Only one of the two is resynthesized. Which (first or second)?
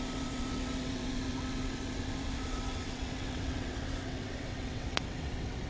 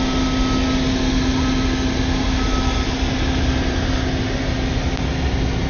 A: first